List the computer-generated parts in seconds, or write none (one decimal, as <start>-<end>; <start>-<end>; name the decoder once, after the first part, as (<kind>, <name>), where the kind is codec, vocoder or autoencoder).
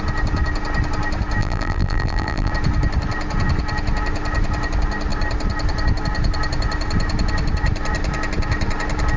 1.4-2.5 (vocoder, BigVGAN v2)